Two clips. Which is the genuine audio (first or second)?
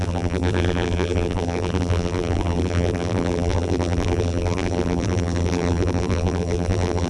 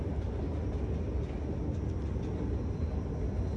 second